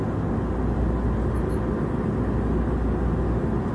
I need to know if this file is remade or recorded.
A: recorded